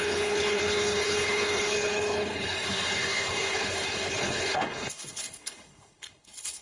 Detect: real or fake fake